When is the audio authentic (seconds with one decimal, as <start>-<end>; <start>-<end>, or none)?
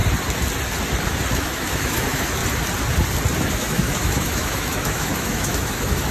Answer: 0.0-1.3; 2.4-3.5